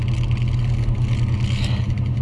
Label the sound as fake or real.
real